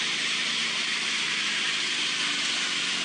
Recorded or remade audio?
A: recorded